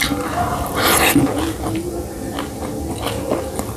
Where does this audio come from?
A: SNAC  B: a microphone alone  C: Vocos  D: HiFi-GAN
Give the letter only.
B